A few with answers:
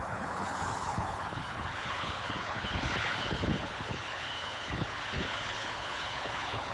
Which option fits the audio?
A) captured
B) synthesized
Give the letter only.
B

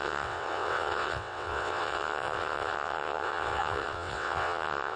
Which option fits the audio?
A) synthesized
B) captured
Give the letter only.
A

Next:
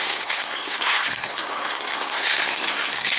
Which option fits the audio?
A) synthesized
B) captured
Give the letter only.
A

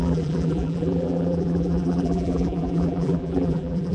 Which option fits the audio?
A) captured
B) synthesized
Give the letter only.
B